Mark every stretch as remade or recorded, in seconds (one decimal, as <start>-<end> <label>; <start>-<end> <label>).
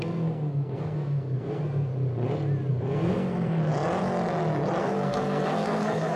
0.0-1.9 remade; 1.9-2.7 recorded; 2.7-3.7 remade; 3.7-4.8 recorded; 4.8-6.2 remade